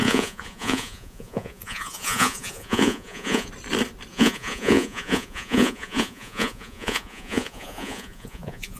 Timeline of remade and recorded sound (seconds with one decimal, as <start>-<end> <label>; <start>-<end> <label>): 0.0-3.5 remade; 3.5-4.1 recorded; 4.1-8.8 remade